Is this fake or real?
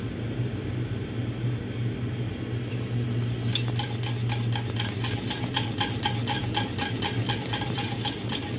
real